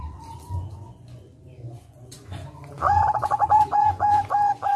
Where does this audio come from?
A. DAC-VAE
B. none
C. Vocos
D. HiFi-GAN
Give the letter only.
C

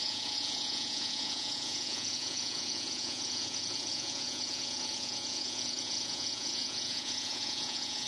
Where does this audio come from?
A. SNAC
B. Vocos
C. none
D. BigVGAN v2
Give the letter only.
B